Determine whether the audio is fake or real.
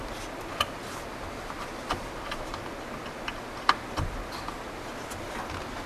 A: real